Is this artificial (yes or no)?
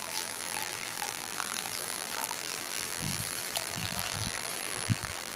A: yes